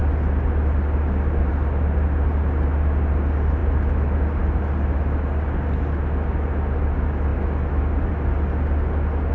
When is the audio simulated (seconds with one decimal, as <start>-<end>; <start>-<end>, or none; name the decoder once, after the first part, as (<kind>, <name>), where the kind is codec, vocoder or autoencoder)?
none